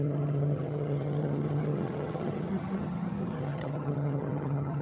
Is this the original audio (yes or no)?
no